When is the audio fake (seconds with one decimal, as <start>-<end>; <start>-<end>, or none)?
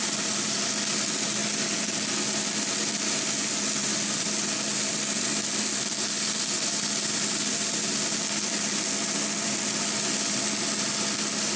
none